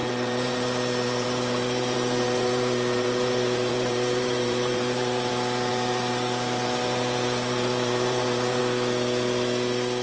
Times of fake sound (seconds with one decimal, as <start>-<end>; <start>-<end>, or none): 0.0-5.3; 5.7-8.6